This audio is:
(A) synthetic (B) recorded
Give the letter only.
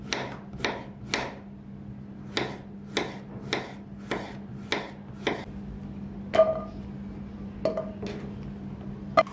B